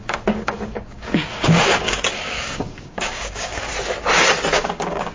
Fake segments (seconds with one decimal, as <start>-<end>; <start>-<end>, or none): 0.0-3.7; 4.5-5.1